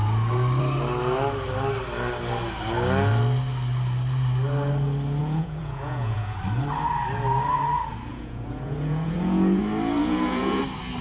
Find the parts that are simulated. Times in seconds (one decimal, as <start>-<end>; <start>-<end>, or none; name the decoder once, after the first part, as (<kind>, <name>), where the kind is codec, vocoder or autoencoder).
5.2-6.4 (vocoder, Vocos); 8.1-9.6; 10.0-10.6